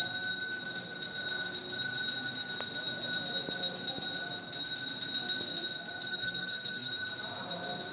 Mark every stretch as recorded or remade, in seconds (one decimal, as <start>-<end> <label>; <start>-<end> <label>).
0.0-6.1 recorded; 6.1-6.9 remade; 6.9-7.9 recorded